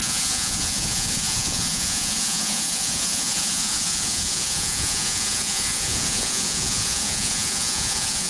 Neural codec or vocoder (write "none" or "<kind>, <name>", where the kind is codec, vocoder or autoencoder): vocoder, Vocos